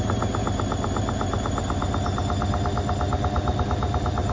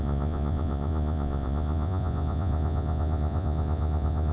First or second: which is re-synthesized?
second